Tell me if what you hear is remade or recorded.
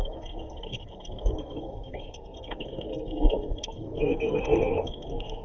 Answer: remade